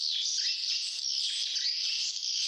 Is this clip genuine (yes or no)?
yes